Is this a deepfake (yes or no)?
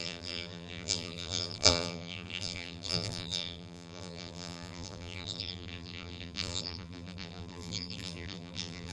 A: yes